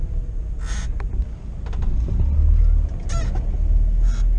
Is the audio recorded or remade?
recorded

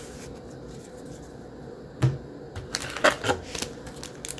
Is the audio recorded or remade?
recorded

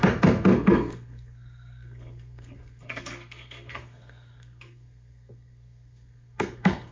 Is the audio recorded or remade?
remade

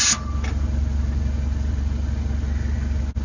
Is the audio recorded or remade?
recorded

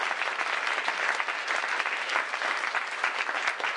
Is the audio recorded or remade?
recorded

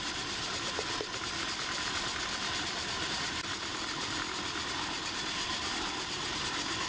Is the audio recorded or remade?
recorded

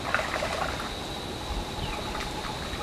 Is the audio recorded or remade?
recorded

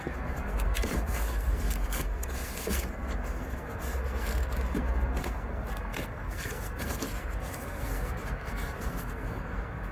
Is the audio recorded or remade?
remade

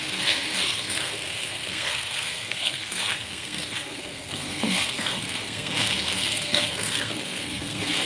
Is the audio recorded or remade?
remade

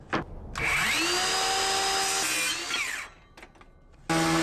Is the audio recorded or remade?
recorded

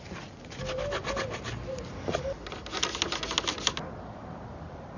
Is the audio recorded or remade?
recorded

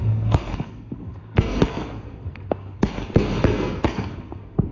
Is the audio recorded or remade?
remade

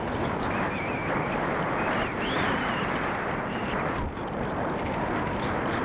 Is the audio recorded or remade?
recorded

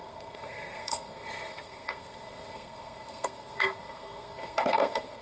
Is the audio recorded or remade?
remade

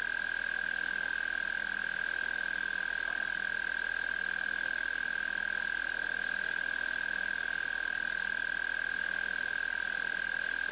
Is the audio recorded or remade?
recorded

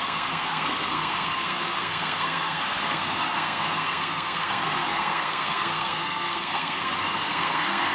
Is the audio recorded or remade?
remade